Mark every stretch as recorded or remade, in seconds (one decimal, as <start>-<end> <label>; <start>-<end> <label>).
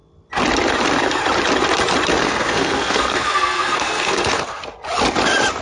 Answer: 0.0-2.2 recorded; 2.2-4.6 remade; 4.6-5.6 recorded